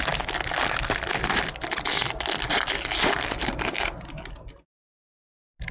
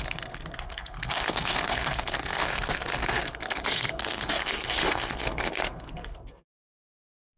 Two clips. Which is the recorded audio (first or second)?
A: first